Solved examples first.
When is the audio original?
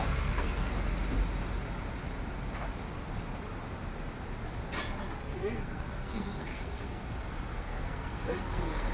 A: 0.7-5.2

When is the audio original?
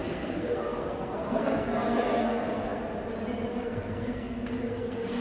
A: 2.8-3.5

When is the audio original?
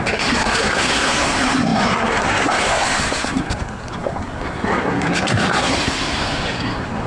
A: none